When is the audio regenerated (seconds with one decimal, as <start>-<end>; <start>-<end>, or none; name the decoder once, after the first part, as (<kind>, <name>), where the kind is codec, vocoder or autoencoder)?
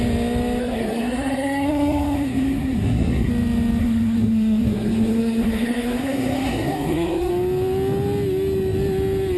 0.6-3.3 (codec, SNAC); 3.8-7.3